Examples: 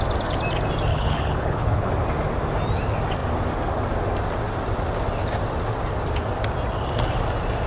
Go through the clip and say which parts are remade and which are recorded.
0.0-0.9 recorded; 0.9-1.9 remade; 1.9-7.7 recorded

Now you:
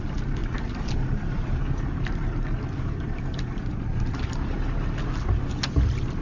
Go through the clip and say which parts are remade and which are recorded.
0.0-6.2 recorded

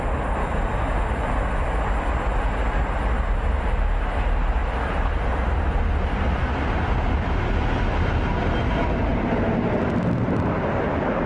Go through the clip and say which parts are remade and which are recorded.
0.0-11.3 recorded